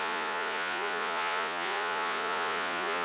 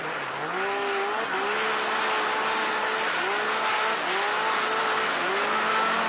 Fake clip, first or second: first